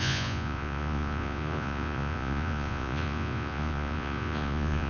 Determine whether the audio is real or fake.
fake